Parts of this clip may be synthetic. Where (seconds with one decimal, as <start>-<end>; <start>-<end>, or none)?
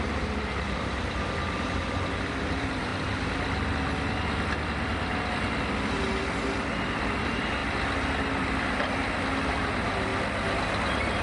0.0-2.9; 6.9-7.6; 9.5-10.1